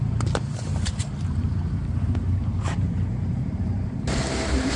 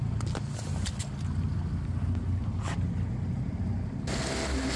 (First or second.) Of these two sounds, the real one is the second